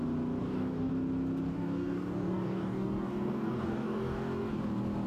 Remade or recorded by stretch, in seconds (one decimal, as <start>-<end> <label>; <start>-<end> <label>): 0.0-0.4 recorded; 0.4-0.9 remade; 0.9-1.5 recorded; 1.5-4.6 remade; 4.6-5.1 recorded